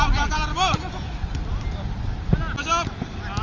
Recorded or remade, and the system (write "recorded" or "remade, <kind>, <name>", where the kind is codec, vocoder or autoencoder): recorded